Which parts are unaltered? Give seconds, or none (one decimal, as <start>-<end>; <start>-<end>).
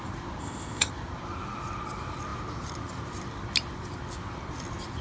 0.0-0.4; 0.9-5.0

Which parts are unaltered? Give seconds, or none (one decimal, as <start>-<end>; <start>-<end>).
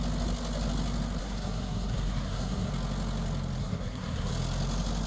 0.0-1.2; 2.7-3.6; 4.3-5.1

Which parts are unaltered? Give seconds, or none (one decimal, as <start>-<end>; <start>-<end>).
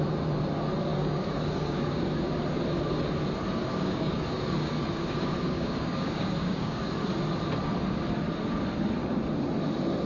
0.0-0.9; 2.0-3.7; 6.9-10.1